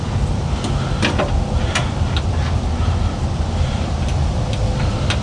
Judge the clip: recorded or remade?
recorded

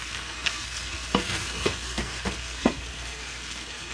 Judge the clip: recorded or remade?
remade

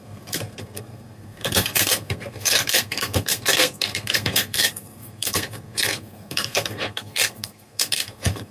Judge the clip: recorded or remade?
remade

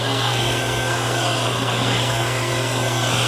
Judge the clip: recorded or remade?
remade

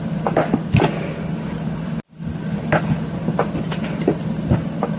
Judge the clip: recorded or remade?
recorded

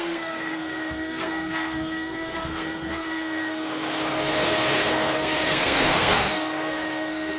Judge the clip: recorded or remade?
remade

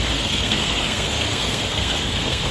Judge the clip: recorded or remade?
remade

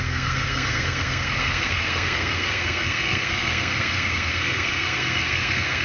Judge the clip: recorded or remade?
remade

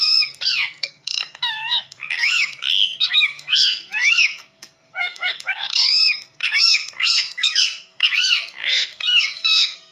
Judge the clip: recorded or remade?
remade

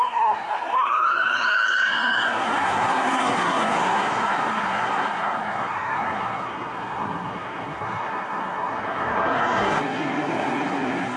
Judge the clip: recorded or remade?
remade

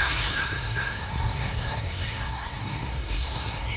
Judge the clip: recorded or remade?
remade